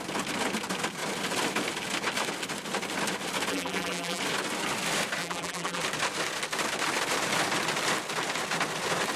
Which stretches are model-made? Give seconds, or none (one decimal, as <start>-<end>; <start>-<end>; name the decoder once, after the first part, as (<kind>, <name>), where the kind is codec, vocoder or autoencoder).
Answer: 3.5-4.2 (vocoder, BigVGAN v2); 5.2-5.8